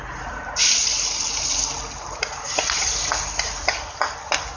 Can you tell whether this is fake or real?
real